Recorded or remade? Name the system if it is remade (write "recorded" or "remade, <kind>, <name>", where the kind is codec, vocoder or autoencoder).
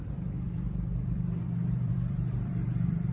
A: remade, vocoder, BigVGAN v2